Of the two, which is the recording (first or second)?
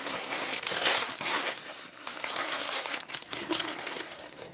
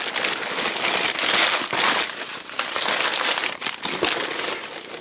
second